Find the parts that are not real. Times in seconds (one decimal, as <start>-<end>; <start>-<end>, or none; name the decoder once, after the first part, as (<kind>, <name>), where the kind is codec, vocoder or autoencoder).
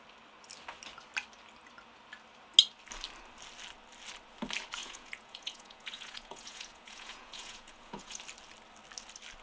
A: 4.8-8.2 (vocoder, Vocos)